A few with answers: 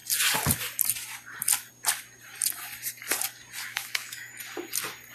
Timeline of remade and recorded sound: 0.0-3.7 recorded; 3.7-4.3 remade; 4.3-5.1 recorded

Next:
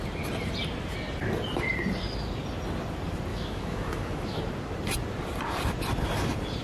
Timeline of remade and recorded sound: 0.0-3.3 recorded; 3.3-4.4 remade; 4.4-6.6 recorded

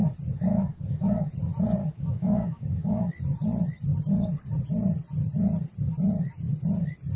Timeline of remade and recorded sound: 0.0-0.5 recorded; 0.5-1.3 remade; 1.3-1.8 recorded; 1.8-3.1 remade; 3.1-7.2 recorded

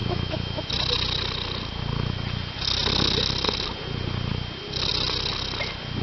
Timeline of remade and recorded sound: 0.0-0.7 remade; 0.7-6.0 recorded